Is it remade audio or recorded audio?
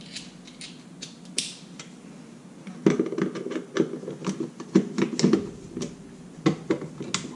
recorded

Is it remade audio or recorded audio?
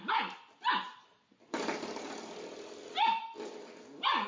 recorded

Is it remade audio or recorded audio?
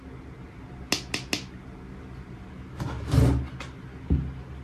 recorded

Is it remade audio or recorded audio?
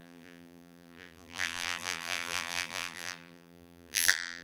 remade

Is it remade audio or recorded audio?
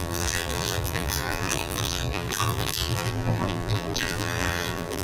remade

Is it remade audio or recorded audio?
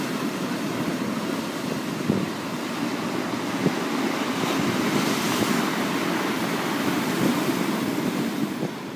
remade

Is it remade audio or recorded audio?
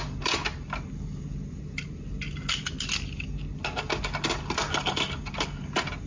recorded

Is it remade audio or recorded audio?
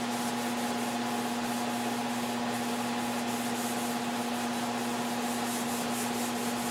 recorded